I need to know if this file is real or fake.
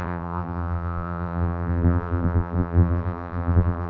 fake